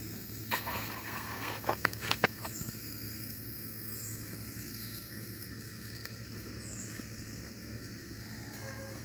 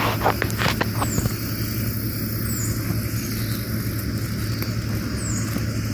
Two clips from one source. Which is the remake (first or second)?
first